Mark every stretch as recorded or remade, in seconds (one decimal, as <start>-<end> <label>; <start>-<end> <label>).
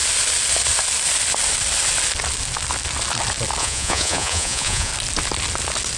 0.0-3.6 recorded; 3.6-4.9 remade; 4.9-6.0 recorded